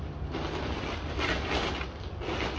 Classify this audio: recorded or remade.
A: recorded